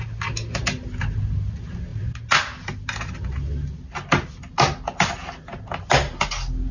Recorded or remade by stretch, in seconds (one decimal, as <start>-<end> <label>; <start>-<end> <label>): 0.0-6.7 recorded